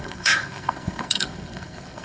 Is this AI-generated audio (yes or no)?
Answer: yes